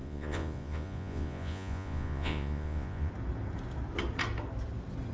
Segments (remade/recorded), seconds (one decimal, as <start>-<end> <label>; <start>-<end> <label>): 0.0-3.1 remade; 3.1-5.1 recorded

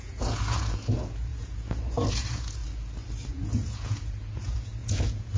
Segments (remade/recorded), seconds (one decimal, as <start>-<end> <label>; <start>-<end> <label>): 0.0-2.6 remade; 2.6-3.3 recorded; 3.3-5.4 remade

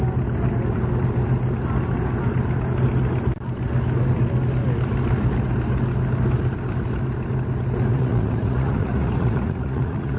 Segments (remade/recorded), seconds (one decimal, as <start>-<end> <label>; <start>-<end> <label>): 0.0-7.9 recorded; 7.9-10.2 remade

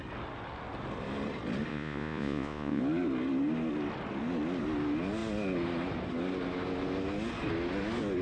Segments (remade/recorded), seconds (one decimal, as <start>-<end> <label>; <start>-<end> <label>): 0.0-1.7 recorded; 1.7-2.8 remade; 2.8-8.2 recorded

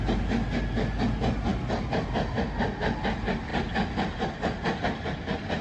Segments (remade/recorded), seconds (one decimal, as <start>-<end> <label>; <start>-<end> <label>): 0.0-5.6 recorded

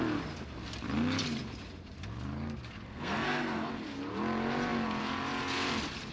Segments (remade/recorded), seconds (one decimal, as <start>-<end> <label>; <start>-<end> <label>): 0.0-2.9 recorded; 2.9-3.7 remade; 3.7-6.1 recorded